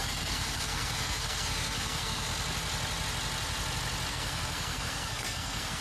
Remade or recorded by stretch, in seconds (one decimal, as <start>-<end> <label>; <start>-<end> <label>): 0.0-2.3 remade; 2.3-4.1 recorded; 4.1-5.8 remade